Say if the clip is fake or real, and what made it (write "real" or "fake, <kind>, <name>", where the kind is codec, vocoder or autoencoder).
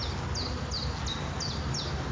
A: real